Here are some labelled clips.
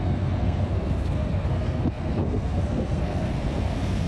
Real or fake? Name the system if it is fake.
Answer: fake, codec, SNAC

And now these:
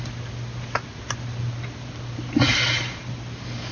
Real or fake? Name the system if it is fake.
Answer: real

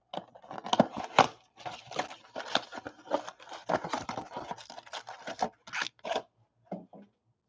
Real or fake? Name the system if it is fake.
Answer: real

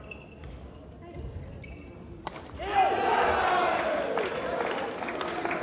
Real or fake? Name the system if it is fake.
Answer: real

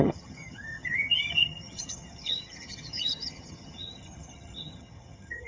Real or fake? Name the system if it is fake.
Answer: fake, vocoder, HiFi-GAN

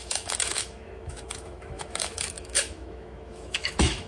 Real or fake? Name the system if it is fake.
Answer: fake, autoencoder, DAC-VAE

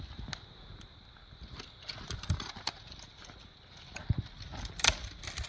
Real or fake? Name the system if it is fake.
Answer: real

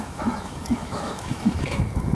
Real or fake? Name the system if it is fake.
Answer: fake, autoencoder, DAC-VAE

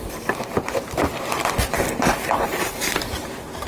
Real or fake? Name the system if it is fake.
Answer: real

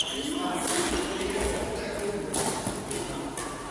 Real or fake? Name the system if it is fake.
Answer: real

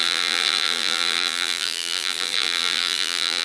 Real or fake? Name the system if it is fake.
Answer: fake, vocoder, BigVGAN v2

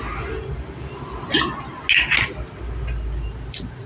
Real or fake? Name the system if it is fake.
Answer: real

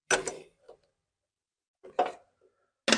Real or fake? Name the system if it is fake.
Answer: real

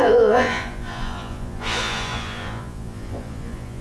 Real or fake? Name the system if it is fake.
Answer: fake, vocoder, Vocos